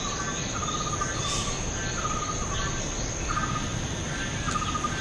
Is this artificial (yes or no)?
no